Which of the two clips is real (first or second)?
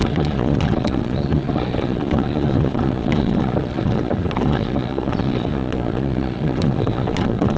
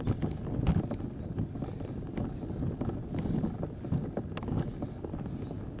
second